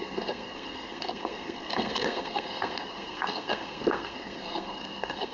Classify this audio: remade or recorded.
remade